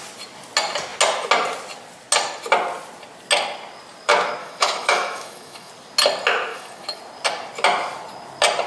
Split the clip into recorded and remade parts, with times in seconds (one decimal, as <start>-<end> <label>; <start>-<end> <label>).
0.0-4.4 recorded; 4.4-5.7 remade; 5.7-6.5 recorded; 6.5-7.0 remade; 7.0-8.7 recorded